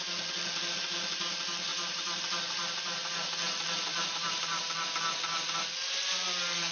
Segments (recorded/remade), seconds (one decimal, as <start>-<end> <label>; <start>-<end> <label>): 0.0-1.7 recorded; 1.7-2.2 remade; 2.2-3.9 recorded; 3.9-4.7 remade; 4.7-6.7 recorded